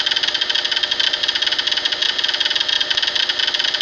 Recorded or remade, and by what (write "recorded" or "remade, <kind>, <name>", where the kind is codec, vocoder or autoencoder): recorded